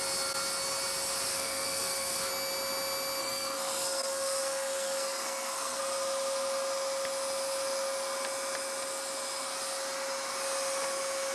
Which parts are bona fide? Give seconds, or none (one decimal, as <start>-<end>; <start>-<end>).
0.0-1.3; 2.3-3.2; 5.8-11.3